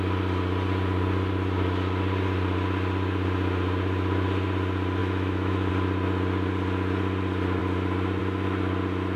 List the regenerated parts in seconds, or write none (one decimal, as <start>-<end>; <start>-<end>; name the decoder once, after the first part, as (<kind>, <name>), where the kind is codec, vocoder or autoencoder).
5.0-5.7 (autoencoder, DAC-VAE)